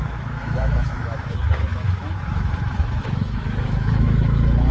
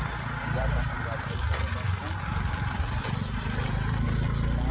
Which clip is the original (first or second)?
second